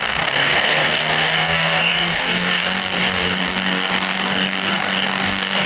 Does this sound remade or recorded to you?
remade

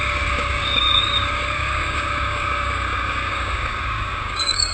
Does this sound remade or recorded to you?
remade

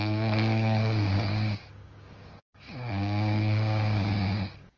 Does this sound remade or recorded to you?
remade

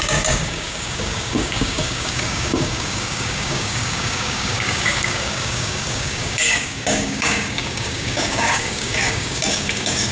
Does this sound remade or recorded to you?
remade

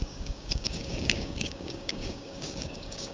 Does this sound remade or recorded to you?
remade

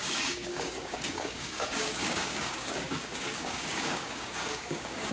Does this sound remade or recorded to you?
remade